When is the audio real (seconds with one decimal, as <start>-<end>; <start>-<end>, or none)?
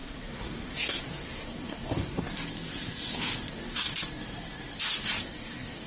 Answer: 2.3-3.5; 3.9-5.2